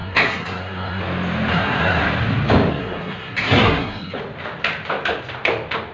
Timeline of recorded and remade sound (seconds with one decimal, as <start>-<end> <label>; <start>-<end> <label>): 0.0-1.0 remade; 1.0-1.5 recorded; 1.5-2.0 remade; 2.0-2.7 recorded; 2.7-4.2 remade; 4.2-5.9 recorded